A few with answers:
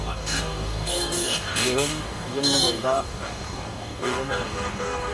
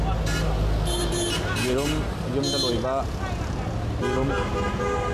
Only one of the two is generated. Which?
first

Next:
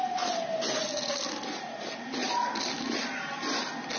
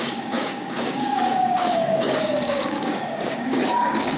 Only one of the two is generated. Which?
second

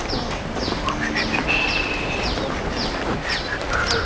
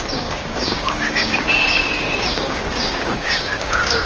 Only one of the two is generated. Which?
second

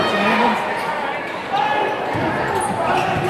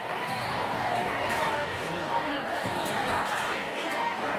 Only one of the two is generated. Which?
second